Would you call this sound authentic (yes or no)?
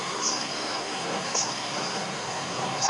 no